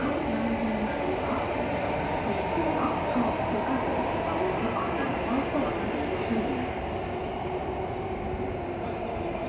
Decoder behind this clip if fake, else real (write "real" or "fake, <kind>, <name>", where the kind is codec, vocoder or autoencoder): real